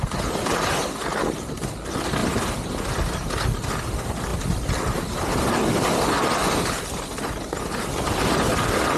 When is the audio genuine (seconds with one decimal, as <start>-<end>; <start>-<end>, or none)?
0.0-9.0